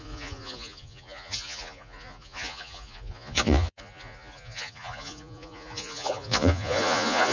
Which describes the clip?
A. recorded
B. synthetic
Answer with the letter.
B